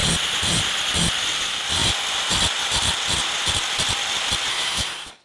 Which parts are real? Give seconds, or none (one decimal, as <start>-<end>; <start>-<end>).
0.0-4.5